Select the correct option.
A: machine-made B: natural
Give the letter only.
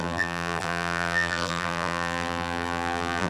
A